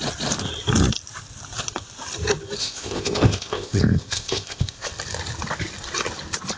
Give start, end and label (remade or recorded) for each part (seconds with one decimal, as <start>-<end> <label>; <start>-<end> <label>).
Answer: 0.0-2.6 recorded; 2.6-4.9 remade; 4.9-6.6 recorded